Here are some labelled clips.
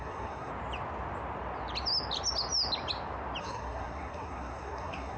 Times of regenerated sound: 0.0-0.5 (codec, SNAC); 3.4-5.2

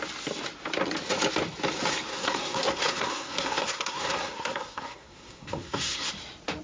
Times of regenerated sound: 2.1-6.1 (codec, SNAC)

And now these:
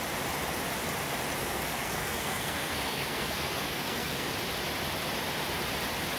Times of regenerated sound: 1.4-4.3 (codec, SNAC)

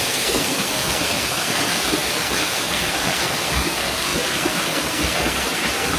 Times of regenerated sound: 0.0-6.0 (codec, SNAC)

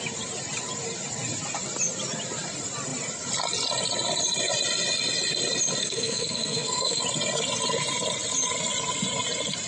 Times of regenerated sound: 5.8-7.0 (codec, SNAC)

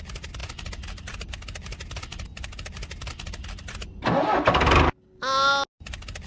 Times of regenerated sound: none

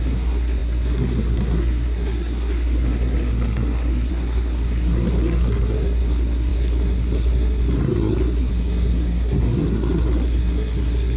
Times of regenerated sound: 0.0-11.2 (codec, SNAC)